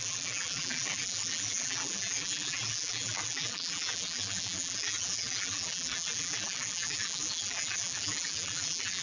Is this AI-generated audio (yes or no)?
yes